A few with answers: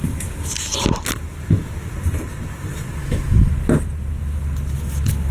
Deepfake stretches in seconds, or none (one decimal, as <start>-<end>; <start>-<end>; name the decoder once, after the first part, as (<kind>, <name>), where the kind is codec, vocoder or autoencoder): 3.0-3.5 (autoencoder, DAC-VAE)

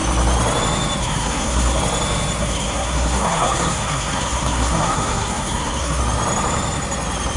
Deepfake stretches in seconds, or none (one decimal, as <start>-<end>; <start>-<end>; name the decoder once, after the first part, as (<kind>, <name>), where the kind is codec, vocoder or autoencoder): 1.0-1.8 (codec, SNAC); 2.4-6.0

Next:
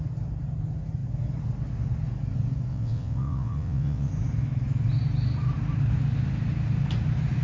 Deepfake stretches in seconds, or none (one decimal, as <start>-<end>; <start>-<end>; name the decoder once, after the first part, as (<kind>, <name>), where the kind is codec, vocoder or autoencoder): 2.7-4.1 (vocoder, WaveNeXt)